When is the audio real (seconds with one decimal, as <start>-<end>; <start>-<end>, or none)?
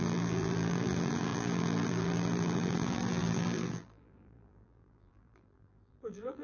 none